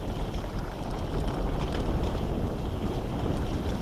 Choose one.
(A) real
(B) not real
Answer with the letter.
A